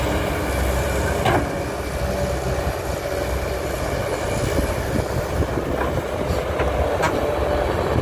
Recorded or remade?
recorded